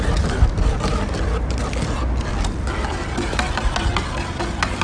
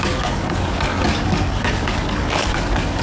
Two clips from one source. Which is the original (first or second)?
first